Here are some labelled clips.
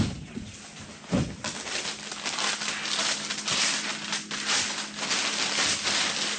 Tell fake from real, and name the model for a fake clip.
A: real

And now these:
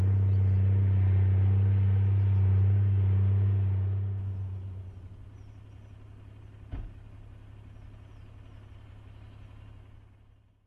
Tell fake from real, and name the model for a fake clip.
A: real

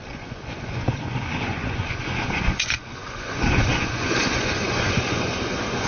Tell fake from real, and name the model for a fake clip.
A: fake, vocoder, Vocos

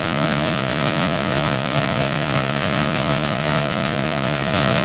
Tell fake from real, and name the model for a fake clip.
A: fake, vocoder, Vocos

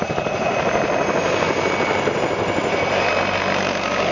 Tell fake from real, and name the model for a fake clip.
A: real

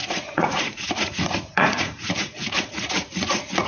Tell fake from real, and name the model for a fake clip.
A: fake, vocoder, Vocos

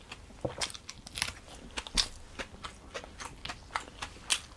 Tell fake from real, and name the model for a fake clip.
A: real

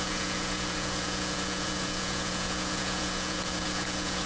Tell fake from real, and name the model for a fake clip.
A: fake, vocoder, Vocos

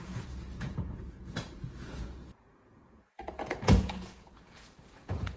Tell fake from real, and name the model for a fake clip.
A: fake, vocoder, Vocos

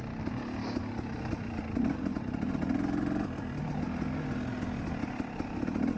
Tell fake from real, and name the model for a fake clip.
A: real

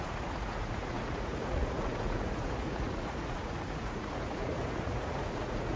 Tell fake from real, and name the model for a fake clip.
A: fake, vocoder, Vocos